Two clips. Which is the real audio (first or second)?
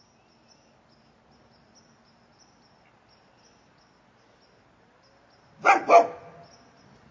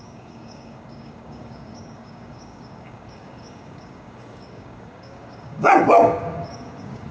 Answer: first